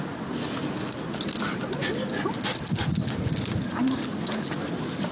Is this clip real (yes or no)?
yes